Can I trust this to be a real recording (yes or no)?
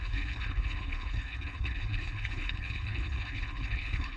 no